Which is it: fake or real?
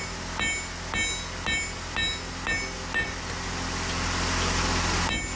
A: real